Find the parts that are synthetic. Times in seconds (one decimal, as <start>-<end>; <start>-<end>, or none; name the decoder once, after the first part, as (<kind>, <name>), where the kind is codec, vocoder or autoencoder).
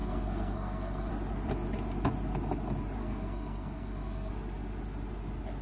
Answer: 0.0-1.1 (codec, SNAC); 3.0-4.3